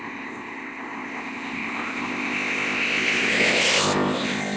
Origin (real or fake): fake